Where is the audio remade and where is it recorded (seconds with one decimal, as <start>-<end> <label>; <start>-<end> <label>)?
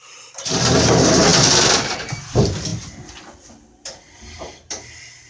0.0-5.3 recorded